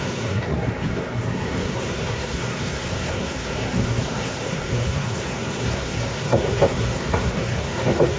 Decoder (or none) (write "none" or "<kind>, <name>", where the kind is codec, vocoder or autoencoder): codec, SNAC